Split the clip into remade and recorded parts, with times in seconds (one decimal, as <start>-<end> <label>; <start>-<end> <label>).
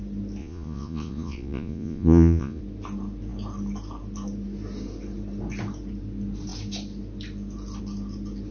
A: 0.0-0.4 recorded; 0.4-2.6 remade; 2.6-8.5 recorded